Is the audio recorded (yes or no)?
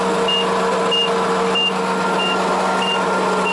yes